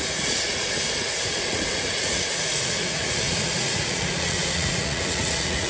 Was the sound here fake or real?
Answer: fake